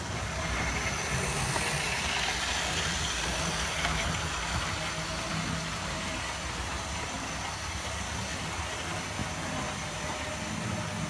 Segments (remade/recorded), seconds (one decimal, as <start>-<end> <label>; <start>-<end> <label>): 0.0-11.1 recorded